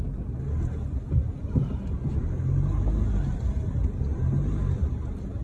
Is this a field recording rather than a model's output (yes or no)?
yes